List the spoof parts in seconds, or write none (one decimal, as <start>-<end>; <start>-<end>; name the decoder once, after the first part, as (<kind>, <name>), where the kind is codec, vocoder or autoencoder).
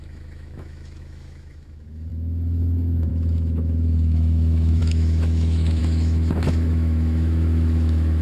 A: 0.0-8.2 (autoencoder, DAC-VAE)